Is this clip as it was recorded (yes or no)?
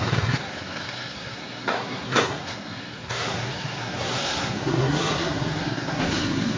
no